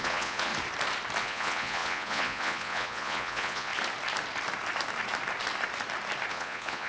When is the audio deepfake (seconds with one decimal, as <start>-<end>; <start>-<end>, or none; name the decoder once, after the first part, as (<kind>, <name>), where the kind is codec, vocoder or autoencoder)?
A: 0.0-0.5 (vocoder, Vocos); 1.2-3.7; 6.3-6.9